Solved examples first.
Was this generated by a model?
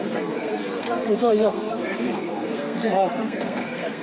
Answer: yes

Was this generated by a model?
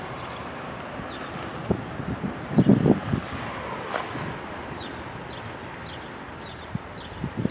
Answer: no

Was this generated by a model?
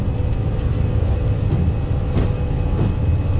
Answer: no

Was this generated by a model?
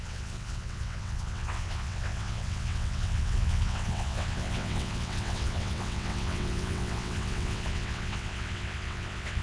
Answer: yes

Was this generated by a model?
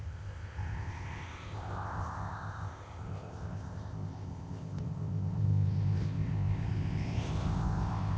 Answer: yes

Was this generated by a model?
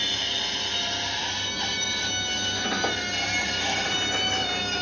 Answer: no